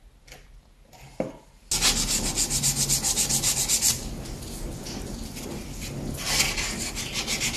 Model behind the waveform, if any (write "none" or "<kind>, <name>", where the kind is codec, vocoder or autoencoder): none